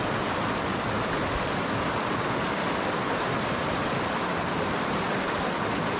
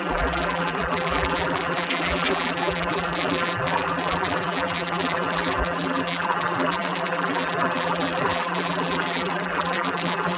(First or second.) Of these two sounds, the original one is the first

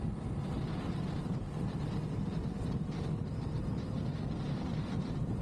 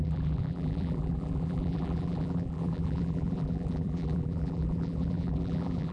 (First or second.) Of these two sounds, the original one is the first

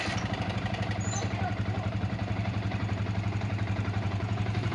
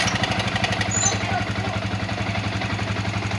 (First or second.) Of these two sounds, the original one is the second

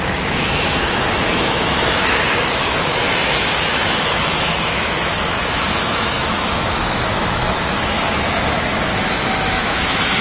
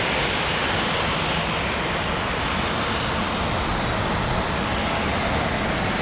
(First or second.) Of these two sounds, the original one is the second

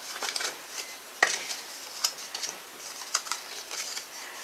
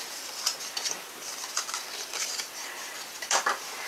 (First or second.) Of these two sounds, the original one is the first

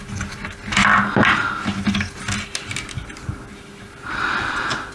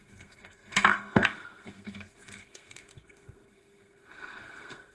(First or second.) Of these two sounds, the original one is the first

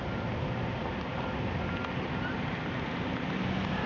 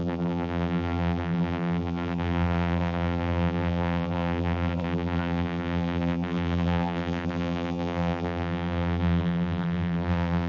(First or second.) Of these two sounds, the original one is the first